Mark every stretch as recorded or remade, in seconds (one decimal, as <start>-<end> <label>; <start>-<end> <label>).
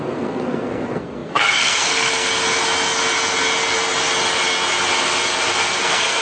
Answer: 0.0-2.3 remade; 2.3-5.5 recorded; 5.5-6.2 remade